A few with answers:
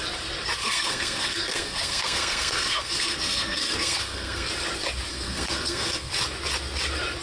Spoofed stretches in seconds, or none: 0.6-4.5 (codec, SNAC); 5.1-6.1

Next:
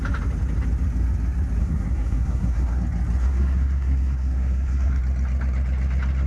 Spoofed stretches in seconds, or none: 1.6-2.8 (codec, SNAC); 3.2-5.0